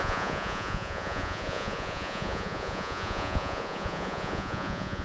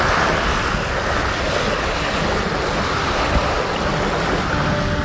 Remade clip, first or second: first